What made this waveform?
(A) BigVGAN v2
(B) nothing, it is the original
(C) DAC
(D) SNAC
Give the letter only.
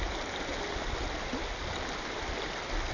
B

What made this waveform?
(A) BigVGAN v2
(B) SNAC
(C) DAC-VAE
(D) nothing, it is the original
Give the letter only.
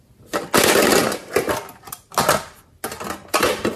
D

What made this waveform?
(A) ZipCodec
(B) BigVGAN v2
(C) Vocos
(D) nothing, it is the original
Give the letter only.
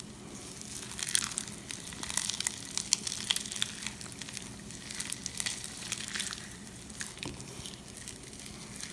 D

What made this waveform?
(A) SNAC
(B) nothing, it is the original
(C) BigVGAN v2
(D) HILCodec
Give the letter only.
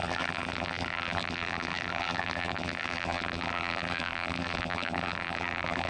C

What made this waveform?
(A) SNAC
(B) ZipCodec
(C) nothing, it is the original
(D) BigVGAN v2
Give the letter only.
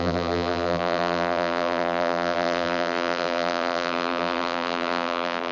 D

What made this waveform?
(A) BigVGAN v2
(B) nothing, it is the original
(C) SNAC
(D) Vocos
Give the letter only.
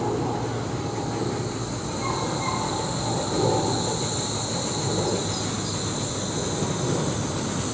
B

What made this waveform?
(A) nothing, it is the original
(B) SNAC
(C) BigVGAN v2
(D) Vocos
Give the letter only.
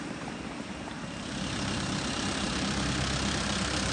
C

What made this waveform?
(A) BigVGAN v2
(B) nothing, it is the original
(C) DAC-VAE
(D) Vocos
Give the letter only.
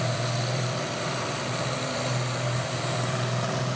A